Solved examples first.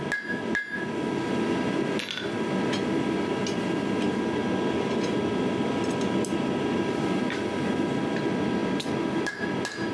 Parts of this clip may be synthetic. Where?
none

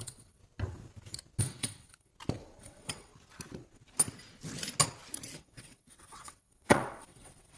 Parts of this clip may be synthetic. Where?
0.0-0.4 (vocoder, WaveNeXt); 1.4-2.1; 2.6-3.1; 5.4-7.6

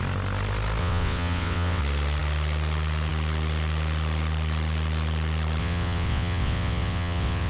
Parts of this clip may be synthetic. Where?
0.8-1.8 (vocoder, WaveNeXt); 5.6-7.5

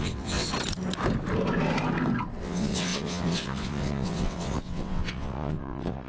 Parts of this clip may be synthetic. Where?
0.0-0.5 (vocoder, WaveNeXt); 2.4-6.1

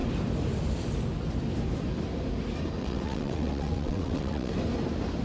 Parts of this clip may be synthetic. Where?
2.8-4.5 (vocoder, WaveNeXt)

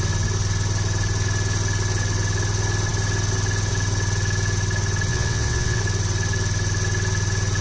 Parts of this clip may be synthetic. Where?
5.1-5.8 (vocoder, WaveNeXt)

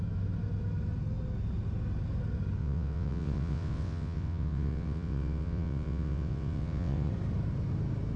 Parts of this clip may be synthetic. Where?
2.6-7.1 (vocoder, WaveNeXt)

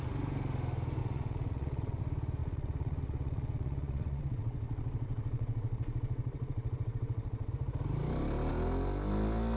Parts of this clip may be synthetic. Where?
1.0-2.0 (vocoder, WaveNeXt); 2.4-7.5